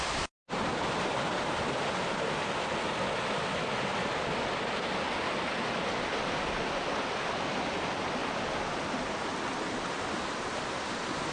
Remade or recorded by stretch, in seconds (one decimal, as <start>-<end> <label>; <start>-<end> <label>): 0.0-11.3 recorded